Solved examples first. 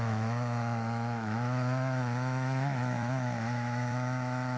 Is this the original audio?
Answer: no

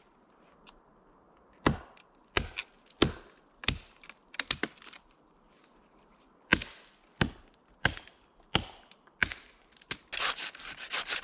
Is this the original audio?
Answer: yes